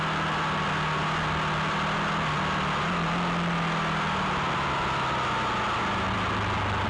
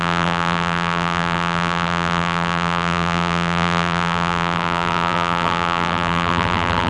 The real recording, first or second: first